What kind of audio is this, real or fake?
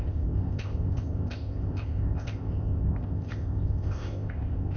fake